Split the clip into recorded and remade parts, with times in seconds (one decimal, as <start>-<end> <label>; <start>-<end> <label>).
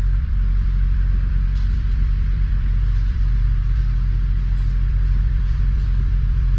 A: 0.0-3.8 remade; 3.8-4.9 recorded; 4.9-6.6 remade